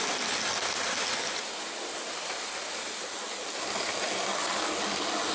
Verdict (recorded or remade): recorded